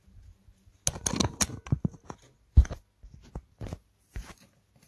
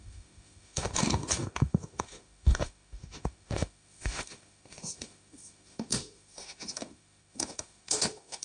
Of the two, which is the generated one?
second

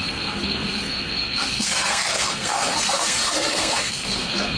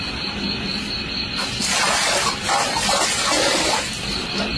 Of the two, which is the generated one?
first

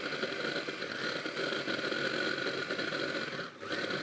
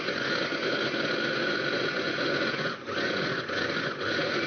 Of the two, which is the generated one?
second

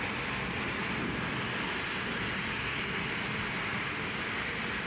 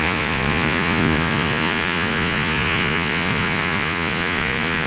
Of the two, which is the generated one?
second